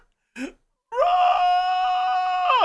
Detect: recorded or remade recorded